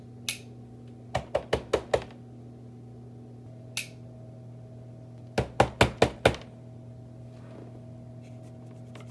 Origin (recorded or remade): recorded